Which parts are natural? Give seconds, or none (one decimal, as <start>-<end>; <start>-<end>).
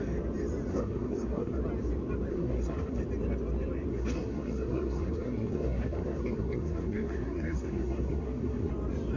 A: 0.0-0.7; 1.6-2.3; 3.0-3.9; 8.7-9.2